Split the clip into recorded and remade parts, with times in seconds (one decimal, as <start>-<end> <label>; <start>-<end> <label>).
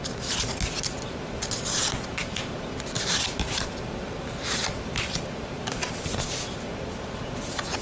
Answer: 0.0-7.8 recorded